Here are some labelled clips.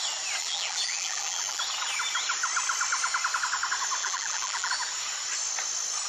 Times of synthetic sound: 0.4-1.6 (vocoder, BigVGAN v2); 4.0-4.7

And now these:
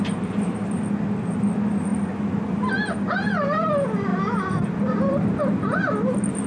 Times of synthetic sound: none

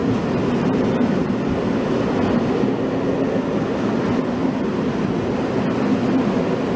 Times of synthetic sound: 0.0-1.4 (vocoder, BigVGAN v2)

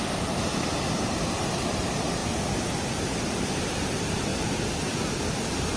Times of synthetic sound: 0.0-0.5 (vocoder, BigVGAN v2); 1.8-4.3; 5.1-5.8